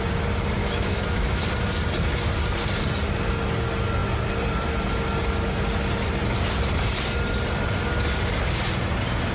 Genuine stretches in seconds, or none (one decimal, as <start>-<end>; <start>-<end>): 0.0-0.6; 1.4-9.3